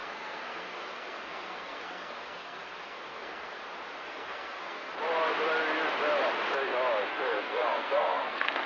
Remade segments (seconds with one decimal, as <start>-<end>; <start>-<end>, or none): 0.0-3.6; 4.0-4.9; 7.1-8.7